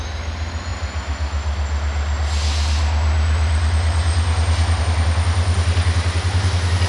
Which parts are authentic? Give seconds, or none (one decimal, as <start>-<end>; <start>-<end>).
0.0-6.9